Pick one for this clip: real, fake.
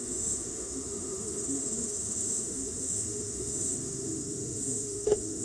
fake